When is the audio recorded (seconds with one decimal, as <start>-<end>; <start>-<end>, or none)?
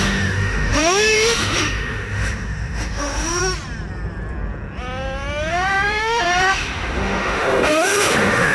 3.4-5.5